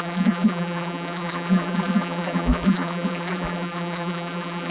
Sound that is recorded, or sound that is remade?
remade